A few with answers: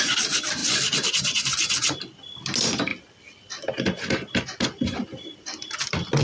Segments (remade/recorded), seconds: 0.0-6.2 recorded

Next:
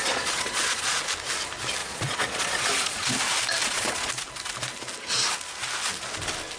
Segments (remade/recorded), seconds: 0.0-1.0 remade; 1.0-1.8 recorded; 1.8-3.1 remade; 3.1-3.6 recorded; 3.6-4.1 remade; 4.1-6.6 recorded